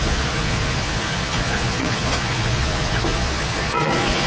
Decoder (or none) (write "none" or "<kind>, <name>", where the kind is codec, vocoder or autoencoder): vocoder, Vocos